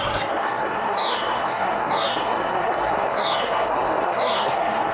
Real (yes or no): no